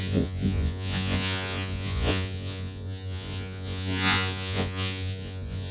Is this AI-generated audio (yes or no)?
yes